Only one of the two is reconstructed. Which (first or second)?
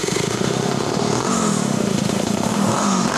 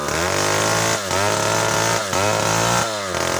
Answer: first